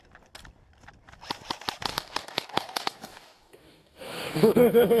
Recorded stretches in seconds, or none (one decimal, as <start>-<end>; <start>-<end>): 0.0-1.9